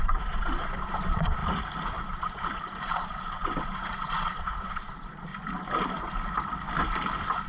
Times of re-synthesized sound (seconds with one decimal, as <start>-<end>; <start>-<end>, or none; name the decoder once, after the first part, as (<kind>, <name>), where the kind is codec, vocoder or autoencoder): 0.0-1.4 (vocoder, Vocos); 1.9-5.3